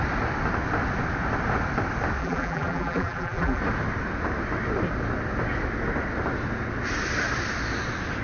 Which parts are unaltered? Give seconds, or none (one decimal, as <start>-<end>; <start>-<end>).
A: 0.0-2.2; 3.6-8.2